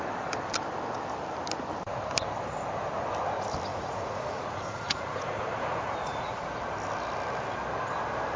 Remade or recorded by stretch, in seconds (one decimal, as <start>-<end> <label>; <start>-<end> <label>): 0.0-3.7 recorded; 3.7-6.5 remade; 6.5-8.4 recorded